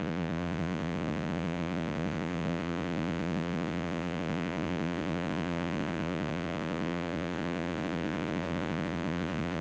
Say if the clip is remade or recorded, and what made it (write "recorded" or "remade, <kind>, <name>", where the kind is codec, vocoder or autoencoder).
remade, vocoder, Vocos